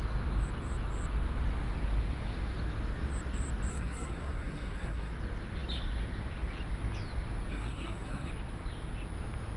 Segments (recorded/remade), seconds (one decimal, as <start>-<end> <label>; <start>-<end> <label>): 0.0-3.7 recorded; 3.7-5.1 remade; 5.1-7.5 recorded; 7.5-8.3 remade; 8.3-9.6 recorded